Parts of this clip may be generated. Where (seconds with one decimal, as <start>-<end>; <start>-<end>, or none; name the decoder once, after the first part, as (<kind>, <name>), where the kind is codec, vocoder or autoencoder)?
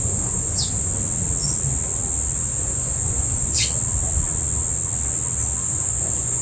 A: 0.0-0.9 (vocoder, Vocos); 2.4-3.6; 5.6-6.4